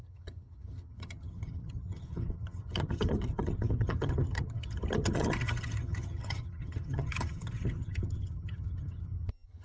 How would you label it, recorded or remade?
remade